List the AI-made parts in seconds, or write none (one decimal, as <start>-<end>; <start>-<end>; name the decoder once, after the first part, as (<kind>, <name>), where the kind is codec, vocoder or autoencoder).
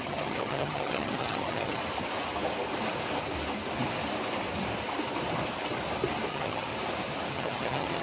0.0-1.8 (vocoder, HiFi-GAN); 6.3-6.7; 7.3-8.0